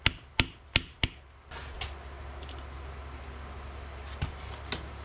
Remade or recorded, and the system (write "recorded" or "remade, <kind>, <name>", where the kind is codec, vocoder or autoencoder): recorded